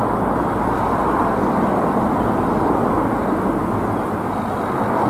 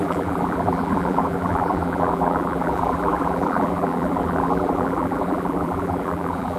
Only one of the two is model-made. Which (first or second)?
second